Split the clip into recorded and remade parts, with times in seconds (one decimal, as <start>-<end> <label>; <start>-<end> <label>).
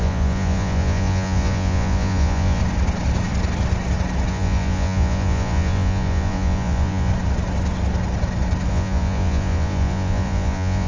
0.0-2.6 remade; 2.6-4.3 recorded; 4.3-7.1 remade; 7.1-8.7 recorded; 8.7-10.9 remade